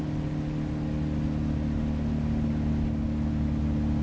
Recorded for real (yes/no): yes